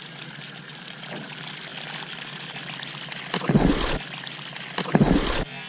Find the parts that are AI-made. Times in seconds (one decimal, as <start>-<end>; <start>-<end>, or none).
none